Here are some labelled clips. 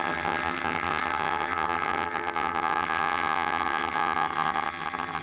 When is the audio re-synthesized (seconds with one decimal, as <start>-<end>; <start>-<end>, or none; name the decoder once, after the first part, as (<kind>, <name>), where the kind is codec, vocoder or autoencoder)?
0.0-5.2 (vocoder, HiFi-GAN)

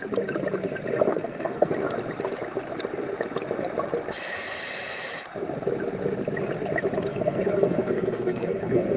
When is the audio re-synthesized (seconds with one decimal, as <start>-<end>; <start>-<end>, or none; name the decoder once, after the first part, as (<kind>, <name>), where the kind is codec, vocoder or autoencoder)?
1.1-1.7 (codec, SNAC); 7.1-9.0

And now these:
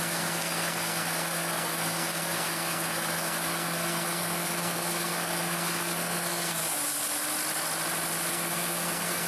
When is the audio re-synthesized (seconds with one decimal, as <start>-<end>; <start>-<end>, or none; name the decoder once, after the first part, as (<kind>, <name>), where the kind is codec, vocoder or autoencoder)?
0.0-6.6 (codec, SNAC); 8.3-9.3

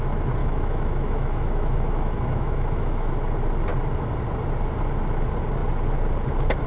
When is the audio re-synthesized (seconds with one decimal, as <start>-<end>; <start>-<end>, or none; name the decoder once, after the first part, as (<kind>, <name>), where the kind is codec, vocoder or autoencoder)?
0.4-3.1 (autoencoder, DAC-VAE)